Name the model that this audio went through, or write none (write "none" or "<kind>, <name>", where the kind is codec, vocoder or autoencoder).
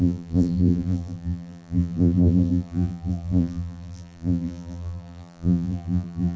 vocoder, BigVGAN v2